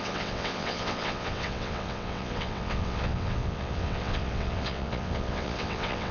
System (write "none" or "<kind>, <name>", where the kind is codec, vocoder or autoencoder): vocoder, WaveNeXt